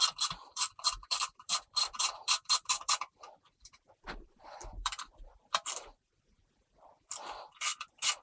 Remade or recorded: remade